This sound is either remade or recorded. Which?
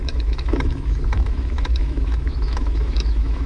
remade